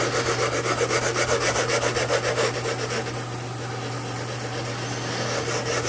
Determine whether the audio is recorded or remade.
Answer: recorded